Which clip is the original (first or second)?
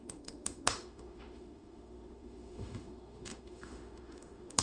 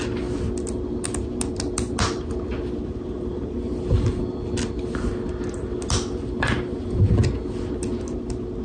second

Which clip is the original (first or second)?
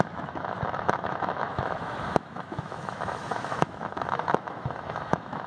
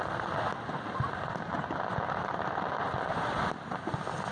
second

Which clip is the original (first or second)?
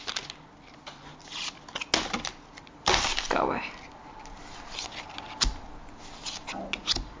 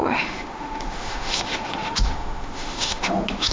first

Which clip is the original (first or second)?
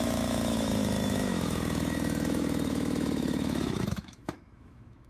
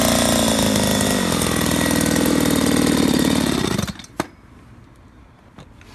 second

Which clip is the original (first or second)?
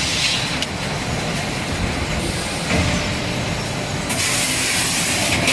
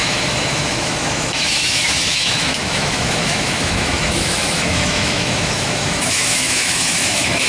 first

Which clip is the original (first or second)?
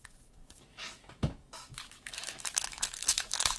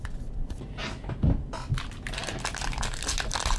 second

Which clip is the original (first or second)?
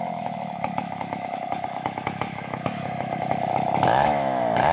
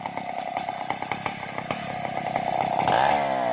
second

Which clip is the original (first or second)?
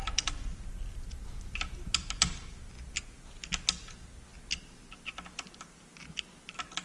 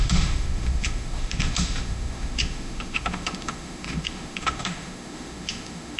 first